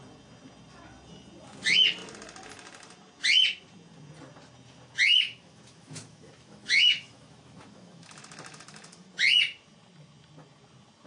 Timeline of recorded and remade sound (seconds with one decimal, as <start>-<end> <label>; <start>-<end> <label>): 0.0-5.1 recorded; 5.1-9.1 remade; 9.1-11.1 recorded